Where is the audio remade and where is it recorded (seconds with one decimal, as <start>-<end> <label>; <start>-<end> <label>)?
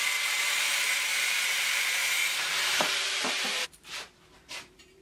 0.0-0.5 recorded; 0.5-5.0 remade